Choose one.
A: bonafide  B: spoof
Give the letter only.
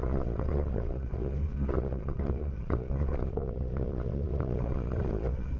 B